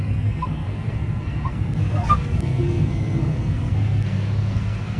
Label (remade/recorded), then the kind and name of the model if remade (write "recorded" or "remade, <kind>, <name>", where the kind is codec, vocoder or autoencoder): remade, codec, SNAC